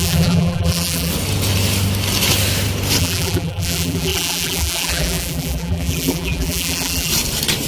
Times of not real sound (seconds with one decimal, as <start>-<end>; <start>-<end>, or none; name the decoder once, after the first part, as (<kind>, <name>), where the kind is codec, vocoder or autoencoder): 0.0-1.1 (vocoder, BigVGAN v2); 3.0-7.1